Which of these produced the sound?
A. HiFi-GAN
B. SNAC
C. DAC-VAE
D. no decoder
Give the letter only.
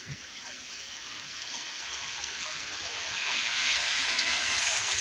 B